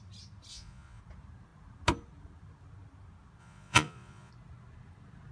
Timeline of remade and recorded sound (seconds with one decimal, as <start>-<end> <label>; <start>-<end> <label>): 0.0-0.5 recorded; 0.5-1.0 remade; 1.0-3.4 recorded; 3.4-4.3 remade; 4.3-5.3 recorded